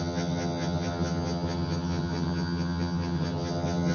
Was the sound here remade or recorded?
remade